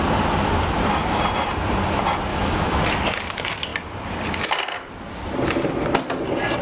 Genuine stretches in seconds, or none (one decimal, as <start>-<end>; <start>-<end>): 0.0-2.3; 2.8-6.6